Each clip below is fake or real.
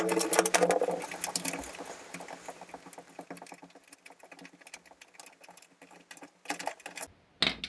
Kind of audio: real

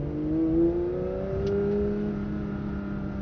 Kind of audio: real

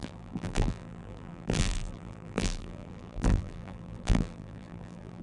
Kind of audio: fake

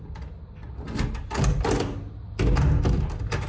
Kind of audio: real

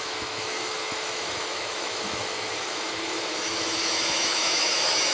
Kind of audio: fake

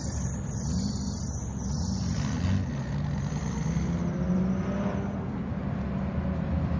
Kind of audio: real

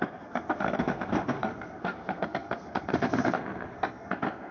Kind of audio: fake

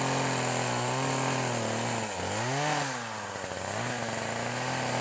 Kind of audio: real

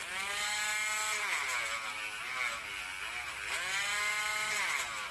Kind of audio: real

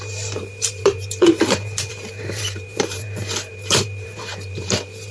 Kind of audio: fake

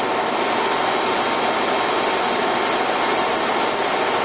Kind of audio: real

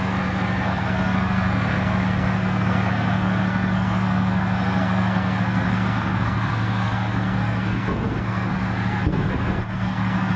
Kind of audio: fake